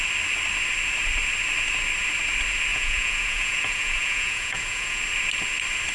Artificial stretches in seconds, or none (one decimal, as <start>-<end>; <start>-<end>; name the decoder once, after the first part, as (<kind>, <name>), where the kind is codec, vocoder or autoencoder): 2.7-5.0 (vocoder, Vocos)